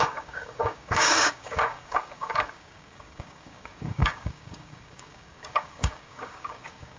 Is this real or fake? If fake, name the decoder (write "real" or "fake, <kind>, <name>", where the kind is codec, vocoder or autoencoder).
fake, codec, DAC